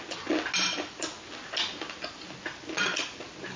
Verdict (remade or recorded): recorded